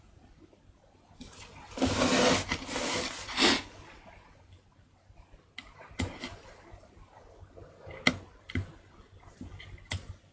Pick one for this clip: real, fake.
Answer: real